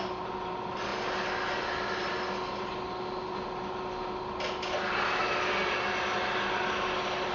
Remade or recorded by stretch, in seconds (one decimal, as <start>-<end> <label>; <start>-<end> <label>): 0.0-7.3 recorded